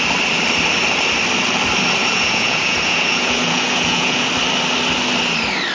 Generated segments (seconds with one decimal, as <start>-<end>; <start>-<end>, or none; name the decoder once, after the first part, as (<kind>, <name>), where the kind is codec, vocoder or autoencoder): 2.0-4.3 (vocoder, Vocos)

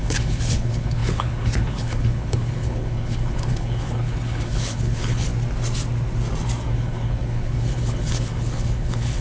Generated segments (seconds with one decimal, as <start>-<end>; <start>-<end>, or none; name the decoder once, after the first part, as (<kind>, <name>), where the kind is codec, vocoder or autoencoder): 0.0-5.3 (codec, HILCodec); 6.7-9.2

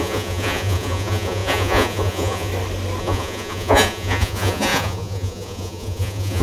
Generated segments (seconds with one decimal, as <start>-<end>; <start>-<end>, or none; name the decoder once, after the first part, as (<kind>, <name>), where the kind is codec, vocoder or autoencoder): 0.0-2.5 (vocoder, Vocos); 3.0-6.4

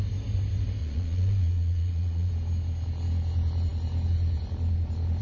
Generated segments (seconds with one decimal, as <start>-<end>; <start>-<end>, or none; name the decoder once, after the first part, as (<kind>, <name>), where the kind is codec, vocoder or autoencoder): 0.8-2.3 (vocoder, Vocos)

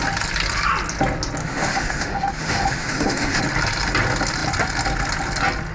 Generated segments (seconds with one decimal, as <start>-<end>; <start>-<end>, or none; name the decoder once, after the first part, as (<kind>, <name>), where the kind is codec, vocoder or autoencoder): 1.4-3.4 (autoencoder, DAC-VAE)

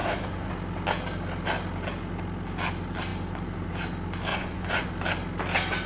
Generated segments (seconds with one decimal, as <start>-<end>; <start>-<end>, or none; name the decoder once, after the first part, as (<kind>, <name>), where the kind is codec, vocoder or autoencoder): 0.0-0.5 (vocoder, Vocos); 4.3-4.9

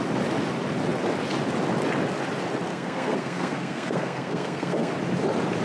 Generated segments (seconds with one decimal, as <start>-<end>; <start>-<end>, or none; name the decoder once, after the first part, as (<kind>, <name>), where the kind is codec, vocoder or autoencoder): 2.7-4.9 (codec, SNAC)